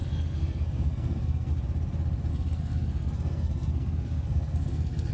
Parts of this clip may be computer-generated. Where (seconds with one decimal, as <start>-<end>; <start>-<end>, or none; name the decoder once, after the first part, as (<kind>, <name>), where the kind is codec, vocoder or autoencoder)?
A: 0.0-1.5 (codec, SNAC); 2.3-5.1